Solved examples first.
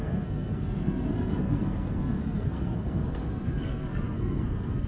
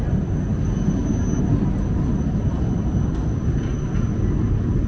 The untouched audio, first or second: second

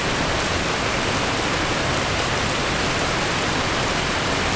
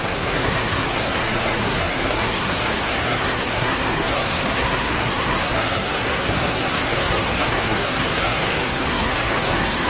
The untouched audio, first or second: first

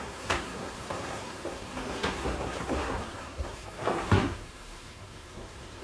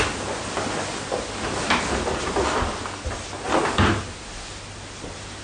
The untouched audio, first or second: second